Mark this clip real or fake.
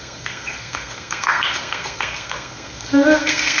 fake